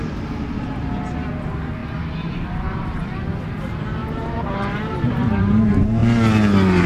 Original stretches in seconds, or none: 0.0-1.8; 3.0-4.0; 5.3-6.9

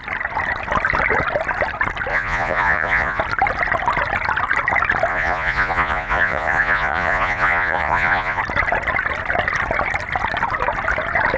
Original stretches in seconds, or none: 0.0-2.1; 3.2-5.1; 8.4-11.4